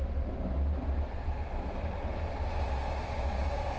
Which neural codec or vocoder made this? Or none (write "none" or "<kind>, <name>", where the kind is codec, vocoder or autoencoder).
none